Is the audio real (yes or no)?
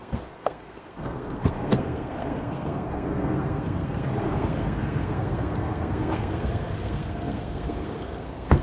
no